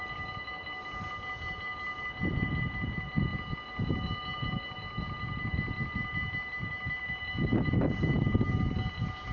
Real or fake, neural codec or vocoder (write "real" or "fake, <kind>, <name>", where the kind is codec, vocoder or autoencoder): real